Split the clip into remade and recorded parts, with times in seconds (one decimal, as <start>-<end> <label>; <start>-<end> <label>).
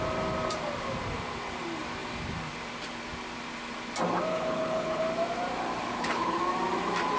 0.0-4.3 recorded; 4.3-5.0 remade; 5.0-5.8 recorded; 5.8-6.4 remade; 6.4-7.2 recorded